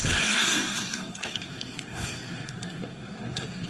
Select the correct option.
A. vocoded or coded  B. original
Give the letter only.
A